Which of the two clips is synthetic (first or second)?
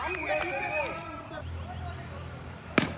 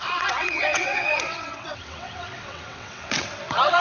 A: second